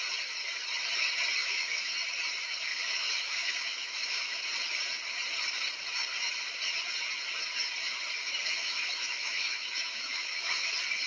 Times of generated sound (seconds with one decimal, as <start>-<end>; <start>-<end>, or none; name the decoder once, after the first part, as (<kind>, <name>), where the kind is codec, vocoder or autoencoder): 1.4-1.9 (autoencoder, DAC-VAE); 2.7-4.4; 8.2-10.7